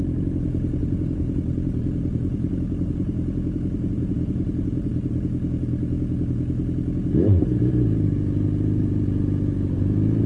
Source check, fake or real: real